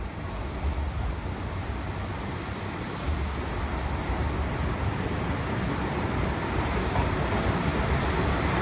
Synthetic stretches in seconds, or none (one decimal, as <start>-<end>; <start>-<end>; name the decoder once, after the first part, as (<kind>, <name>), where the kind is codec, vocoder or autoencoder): none